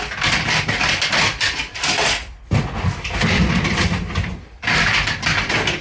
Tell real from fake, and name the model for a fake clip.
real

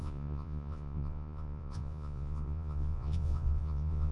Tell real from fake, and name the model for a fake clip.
fake, vocoder, Vocos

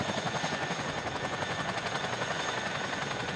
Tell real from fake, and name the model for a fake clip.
fake, vocoder, Vocos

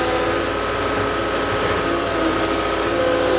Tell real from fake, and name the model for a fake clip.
real